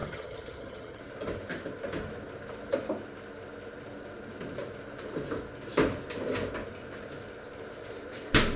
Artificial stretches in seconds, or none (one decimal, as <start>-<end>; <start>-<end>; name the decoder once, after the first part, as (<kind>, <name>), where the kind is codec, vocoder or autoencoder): 0.0-1.0 (vocoder, HiFi-GAN)